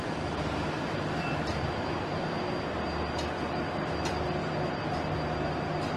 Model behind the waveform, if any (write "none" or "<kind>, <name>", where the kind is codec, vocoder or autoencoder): none